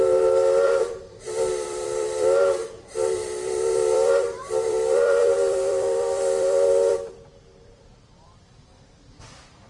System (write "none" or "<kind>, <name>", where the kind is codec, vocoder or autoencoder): vocoder, BigVGAN v2